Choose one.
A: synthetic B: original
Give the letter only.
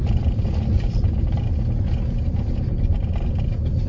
B